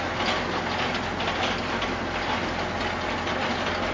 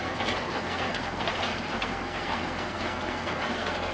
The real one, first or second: first